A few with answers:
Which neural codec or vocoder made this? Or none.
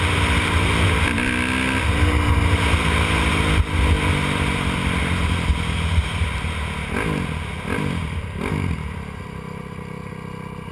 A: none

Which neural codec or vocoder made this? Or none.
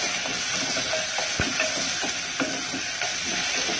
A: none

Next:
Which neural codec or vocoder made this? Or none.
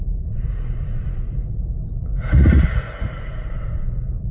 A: vocoder, Vocos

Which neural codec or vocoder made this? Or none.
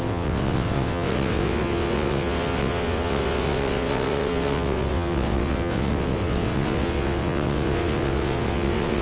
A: vocoder, WaveNeXt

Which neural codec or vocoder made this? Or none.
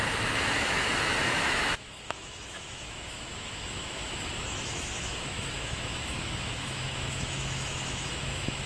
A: autoencoder, DAC-VAE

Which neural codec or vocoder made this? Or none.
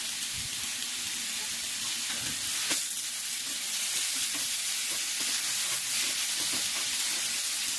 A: none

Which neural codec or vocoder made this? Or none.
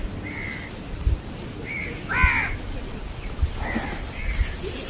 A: none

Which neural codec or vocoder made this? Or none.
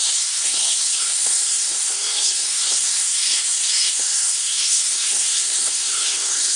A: codec, SNAC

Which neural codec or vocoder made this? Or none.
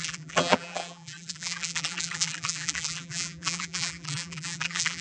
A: vocoder, BigVGAN v2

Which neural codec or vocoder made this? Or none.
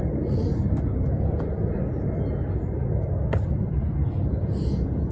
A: none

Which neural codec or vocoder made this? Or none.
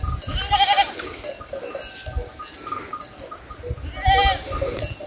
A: none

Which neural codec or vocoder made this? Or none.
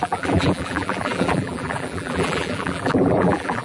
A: vocoder, BigVGAN v2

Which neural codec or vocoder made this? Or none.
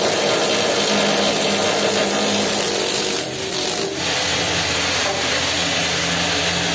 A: none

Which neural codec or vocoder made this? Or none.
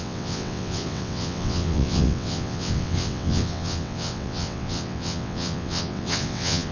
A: vocoder, WaveNeXt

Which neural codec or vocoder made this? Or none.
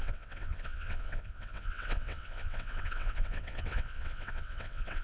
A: vocoder, WaveNeXt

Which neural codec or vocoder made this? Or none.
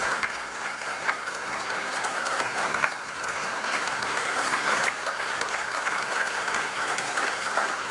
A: codec, SNAC